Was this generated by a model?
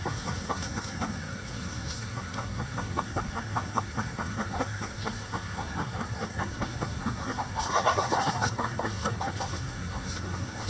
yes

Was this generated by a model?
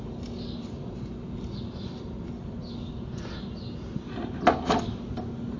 no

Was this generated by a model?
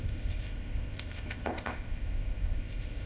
yes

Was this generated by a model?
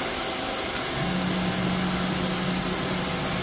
no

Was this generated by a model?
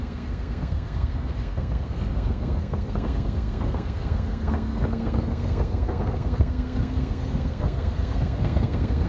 yes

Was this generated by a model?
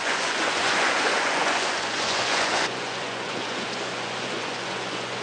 yes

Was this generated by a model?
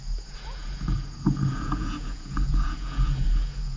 yes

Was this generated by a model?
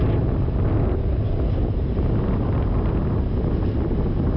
no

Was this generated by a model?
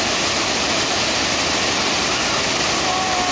no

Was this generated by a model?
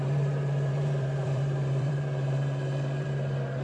yes